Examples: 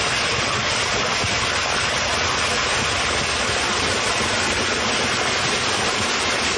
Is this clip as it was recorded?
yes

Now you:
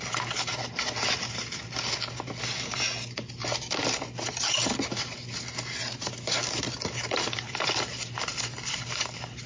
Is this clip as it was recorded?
yes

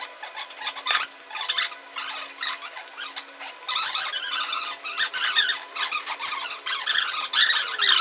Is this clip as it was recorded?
yes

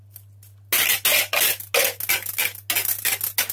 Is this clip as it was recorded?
yes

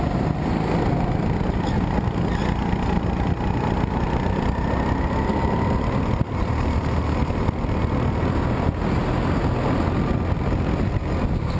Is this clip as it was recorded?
yes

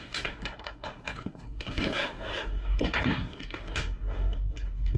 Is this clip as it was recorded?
no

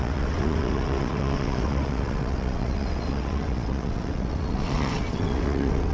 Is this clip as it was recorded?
no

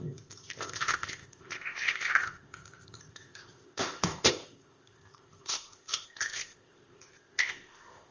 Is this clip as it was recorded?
no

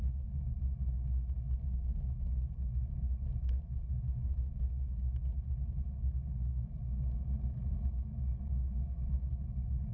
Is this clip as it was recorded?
yes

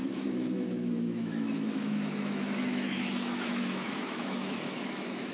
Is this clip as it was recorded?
no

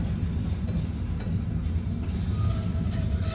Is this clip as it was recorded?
yes